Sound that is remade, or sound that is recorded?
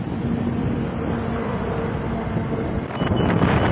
remade